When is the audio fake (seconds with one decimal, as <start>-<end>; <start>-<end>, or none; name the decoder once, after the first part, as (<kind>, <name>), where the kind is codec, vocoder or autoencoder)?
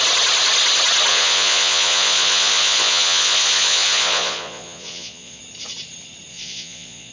1.1-5.4 (vocoder, Vocos); 6.3-7.1